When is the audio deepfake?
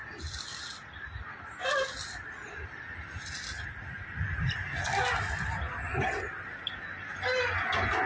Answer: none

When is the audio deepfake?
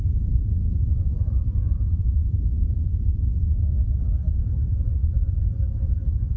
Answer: 2.0-2.9